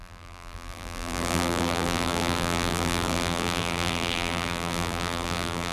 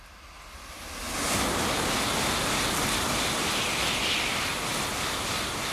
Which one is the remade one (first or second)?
first